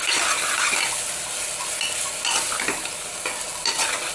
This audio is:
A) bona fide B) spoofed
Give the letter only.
A